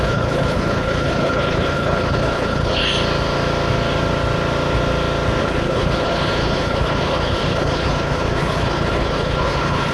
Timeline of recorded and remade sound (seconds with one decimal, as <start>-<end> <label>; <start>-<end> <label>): 0.0-2.8 remade; 2.8-5.4 recorded; 5.4-9.9 remade